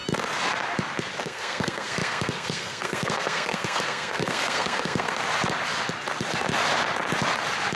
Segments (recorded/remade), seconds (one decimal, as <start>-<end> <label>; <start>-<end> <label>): 0.0-1.2 recorded; 1.2-5.2 remade; 5.2-7.8 recorded

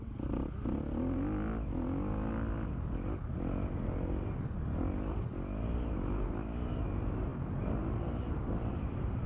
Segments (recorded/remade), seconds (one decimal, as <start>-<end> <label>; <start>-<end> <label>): 0.0-9.3 recorded

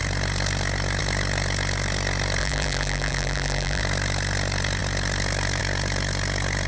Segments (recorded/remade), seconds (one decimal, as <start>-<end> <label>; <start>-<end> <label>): 0.0-2.4 recorded; 2.4-3.8 remade; 3.8-6.7 recorded